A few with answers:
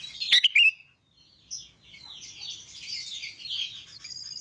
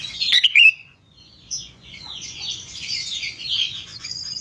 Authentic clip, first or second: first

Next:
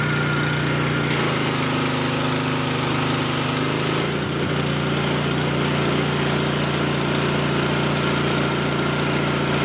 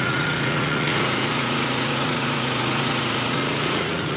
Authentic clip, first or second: first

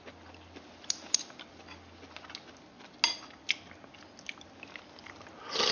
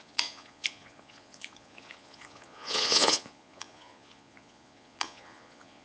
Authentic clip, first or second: first